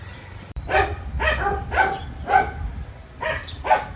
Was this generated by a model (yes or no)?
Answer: yes